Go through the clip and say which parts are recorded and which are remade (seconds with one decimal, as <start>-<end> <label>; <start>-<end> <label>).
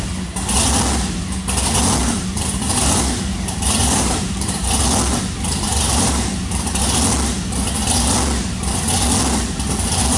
0.0-2.0 recorded; 2.0-4.7 remade; 4.7-5.7 recorded; 5.7-6.8 remade; 6.8-10.2 recorded